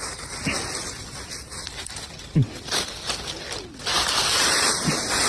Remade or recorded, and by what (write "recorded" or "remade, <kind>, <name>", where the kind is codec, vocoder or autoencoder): recorded